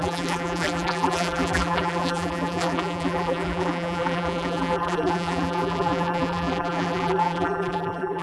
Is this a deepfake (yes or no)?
yes